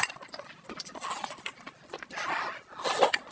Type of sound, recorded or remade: recorded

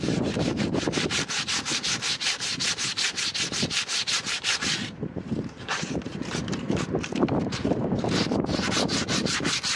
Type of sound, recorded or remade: remade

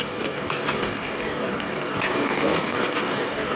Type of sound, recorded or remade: remade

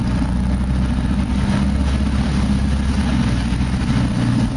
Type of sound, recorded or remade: recorded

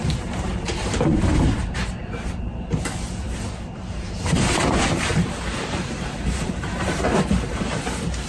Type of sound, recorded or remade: remade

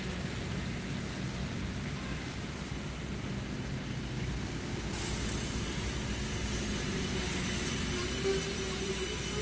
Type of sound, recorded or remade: recorded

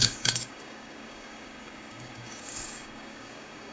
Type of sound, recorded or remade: remade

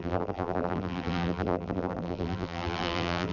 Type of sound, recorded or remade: remade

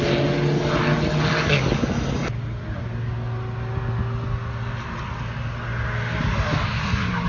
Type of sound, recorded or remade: recorded